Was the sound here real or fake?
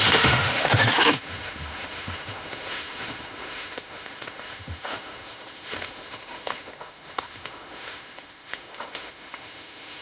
fake